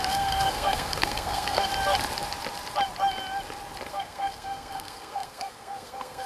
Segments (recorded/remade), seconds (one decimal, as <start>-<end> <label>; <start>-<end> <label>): 0.0-1.7 remade; 1.7-3.9 recorded; 3.9-6.3 remade